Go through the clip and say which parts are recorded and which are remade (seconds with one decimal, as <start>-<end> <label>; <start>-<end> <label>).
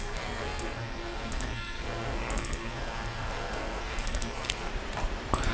0.0-4.7 remade; 4.7-5.5 recorded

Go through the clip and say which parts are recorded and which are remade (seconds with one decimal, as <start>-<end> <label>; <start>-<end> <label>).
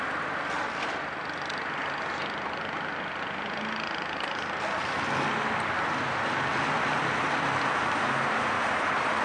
0.0-9.2 recorded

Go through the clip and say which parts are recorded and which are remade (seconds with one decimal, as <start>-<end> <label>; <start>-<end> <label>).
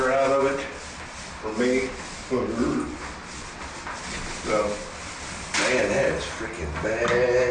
0.0-7.5 recorded